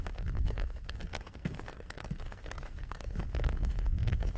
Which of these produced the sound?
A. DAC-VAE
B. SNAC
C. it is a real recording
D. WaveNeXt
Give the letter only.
B